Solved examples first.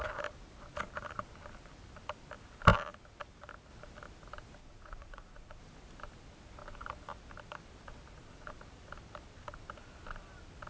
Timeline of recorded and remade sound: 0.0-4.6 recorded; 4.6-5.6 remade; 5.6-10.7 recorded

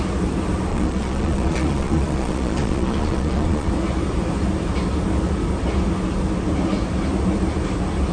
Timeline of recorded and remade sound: 0.0-0.7 recorded; 0.7-3.7 remade; 3.7-8.1 recorded

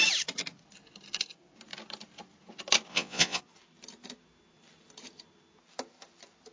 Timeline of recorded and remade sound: 0.0-2.9 recorded; 2.9-3.4 remade; 3.4-6.5 recorded

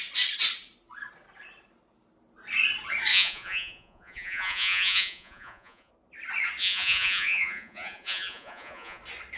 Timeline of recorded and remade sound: 0.0-3.1 recorded; 3.1-5.9 remade; 5.9-6.6 recorded; 6.6-9.0 remade; 9.0-9.4 recorded

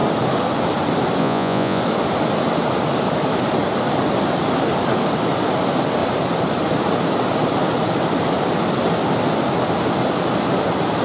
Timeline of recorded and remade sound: 0.0-1.2 recorded; 1.2-1.8 remade; 1.8-11.0 recorded

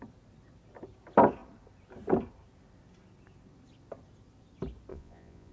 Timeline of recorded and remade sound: 0.0-4.9 recorded; 4.9-5.5 remade